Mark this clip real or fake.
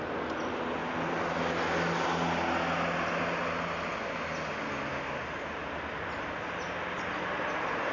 real